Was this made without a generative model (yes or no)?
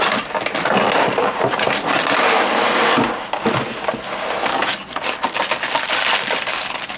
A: yes